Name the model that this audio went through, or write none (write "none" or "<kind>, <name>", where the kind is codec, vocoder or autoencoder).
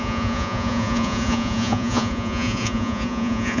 vocoder, Vocos